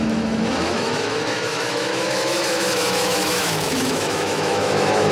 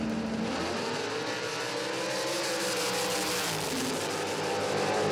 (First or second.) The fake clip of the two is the first